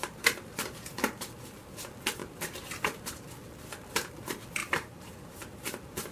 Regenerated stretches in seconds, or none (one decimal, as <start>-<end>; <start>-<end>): 0.0-1.3; 2.2-3.3; 4.6-5.2

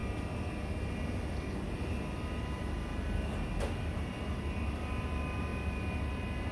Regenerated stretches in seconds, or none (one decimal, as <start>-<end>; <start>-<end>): none

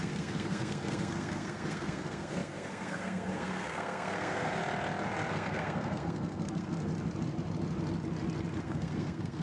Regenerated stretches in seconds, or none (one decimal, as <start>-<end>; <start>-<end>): 0.0-4.6; 5.3-6.9; 8.6-9.4

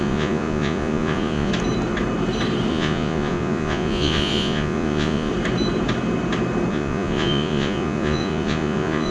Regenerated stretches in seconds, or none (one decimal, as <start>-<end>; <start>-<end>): 0.0-1.5; 2.7-5.3; 6.7-9.1

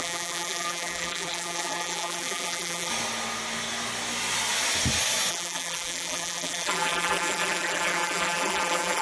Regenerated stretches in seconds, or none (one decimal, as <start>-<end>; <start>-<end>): 0.0-2.9; 5.3-9.0